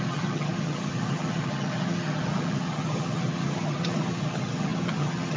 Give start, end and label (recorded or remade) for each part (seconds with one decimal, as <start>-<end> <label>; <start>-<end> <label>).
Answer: 0.0-5.4 remade